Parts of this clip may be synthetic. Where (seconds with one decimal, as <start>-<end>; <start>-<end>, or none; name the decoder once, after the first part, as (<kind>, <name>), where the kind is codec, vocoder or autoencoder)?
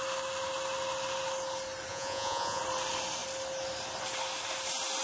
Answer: 1.9-2.6 (vocoder, Vocos)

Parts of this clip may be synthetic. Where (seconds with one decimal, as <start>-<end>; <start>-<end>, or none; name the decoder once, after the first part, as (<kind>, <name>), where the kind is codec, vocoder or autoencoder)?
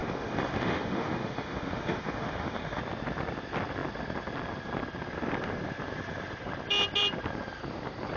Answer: 0.0-2.8 (autoencoder, DAC-VAE)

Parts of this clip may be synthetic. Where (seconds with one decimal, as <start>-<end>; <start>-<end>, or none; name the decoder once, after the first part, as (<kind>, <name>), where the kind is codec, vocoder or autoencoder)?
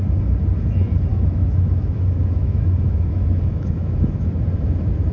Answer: 1.1-4.2 (autoencoder, DAC-VAE)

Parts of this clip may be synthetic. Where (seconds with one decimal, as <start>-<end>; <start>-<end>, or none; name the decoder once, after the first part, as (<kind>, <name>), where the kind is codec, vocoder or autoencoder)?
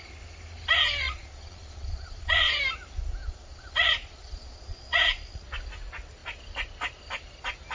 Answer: 1.0-2.6 (vocoder, Vocos); 3.2-5.2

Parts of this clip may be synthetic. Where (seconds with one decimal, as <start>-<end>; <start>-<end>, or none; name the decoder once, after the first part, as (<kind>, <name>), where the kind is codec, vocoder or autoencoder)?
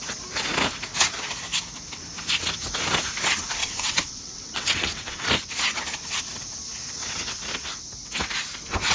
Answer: 3.6-5.3 (vocoder, WaveNeXt)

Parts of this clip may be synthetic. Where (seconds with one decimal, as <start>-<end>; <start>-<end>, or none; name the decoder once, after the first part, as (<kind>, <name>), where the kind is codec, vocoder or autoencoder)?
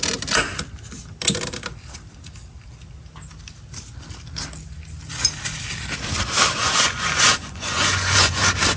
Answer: 6.6-8.4 (vocoder, Vocos)